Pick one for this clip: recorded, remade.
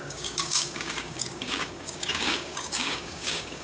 remade